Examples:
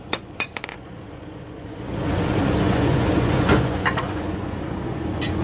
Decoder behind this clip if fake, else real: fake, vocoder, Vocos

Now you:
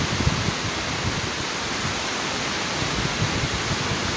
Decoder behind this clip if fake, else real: real